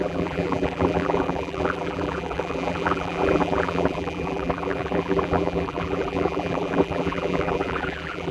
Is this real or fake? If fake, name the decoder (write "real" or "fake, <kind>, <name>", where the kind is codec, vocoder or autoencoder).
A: fake, vocoder, BigVGAN v2